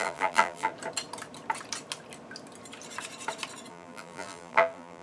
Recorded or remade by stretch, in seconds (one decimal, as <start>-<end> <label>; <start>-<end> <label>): 0.0-0.7 remade; 0.7-3.7 recorded; 3.7-5.0 remade